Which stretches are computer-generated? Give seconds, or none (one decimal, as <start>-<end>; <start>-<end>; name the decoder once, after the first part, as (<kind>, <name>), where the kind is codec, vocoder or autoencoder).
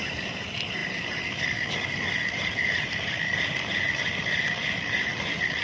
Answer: none